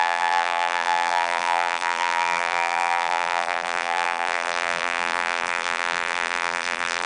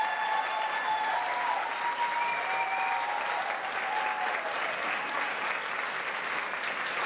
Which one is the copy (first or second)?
first